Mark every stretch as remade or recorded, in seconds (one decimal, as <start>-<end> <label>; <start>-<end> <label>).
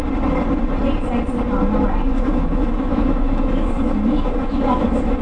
0.0-2.1 recorded; 2.1-5.2 remade